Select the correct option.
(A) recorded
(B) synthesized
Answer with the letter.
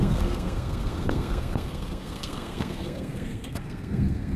B